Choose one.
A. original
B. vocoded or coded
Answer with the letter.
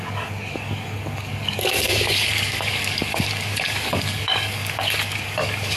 B